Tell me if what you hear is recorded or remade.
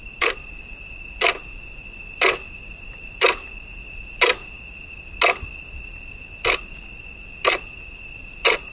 recorded